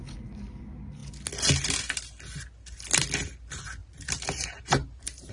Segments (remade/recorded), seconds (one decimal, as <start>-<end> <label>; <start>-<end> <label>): 0.0-3.8 recorded; 3.8-5.3 remade